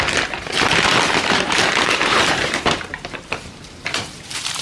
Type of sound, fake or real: fake